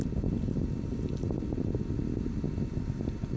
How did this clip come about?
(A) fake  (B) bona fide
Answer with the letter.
B